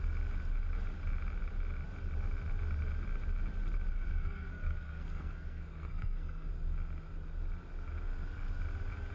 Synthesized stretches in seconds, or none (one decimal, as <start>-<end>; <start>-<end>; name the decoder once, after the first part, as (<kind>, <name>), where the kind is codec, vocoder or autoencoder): 3.9-6.5 (codec, SNAC)